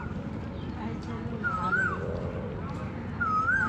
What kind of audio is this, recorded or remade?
recorded